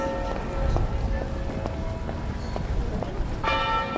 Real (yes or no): yes